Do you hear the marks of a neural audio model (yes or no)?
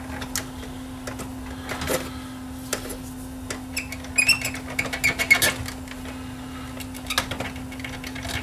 no